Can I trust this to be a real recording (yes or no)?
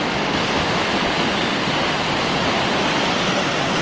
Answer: yes